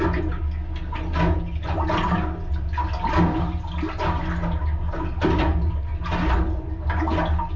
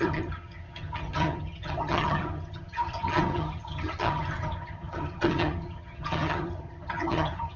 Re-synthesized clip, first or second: second